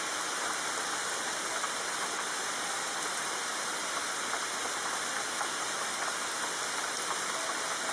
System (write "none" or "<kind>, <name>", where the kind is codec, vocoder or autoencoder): none